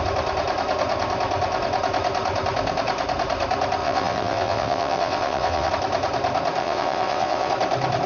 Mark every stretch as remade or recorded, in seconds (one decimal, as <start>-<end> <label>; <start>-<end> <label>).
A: 0.0-3.8 recorded; 3.8-5.7 remade; 5.7-6.6 recorded; 6.6-7.5 remade; 7.5-8.1 recorded